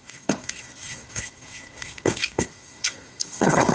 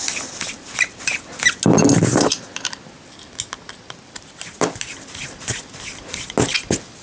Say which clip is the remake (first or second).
first